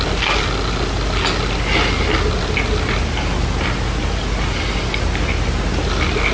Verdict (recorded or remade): recorded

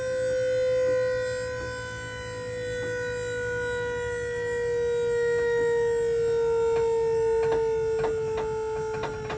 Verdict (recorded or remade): recorded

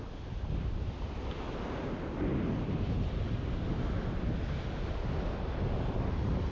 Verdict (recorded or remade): recorded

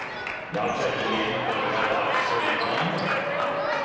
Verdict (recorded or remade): recorded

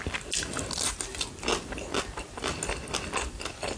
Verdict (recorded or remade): recorded